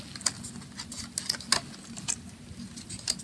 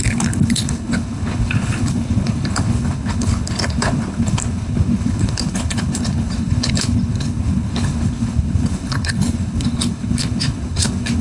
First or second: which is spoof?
second